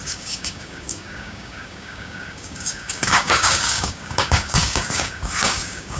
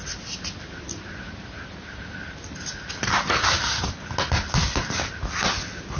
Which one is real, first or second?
second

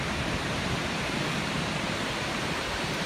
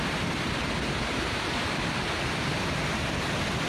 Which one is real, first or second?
second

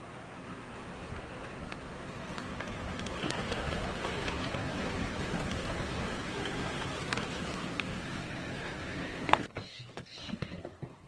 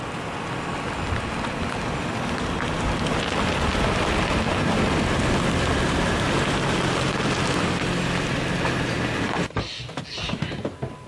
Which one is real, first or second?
second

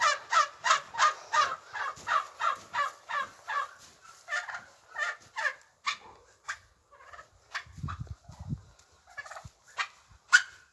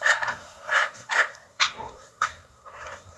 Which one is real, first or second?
first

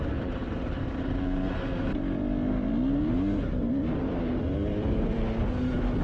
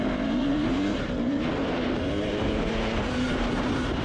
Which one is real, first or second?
first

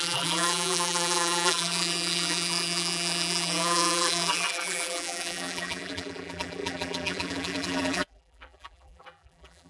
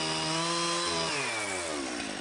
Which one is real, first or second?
second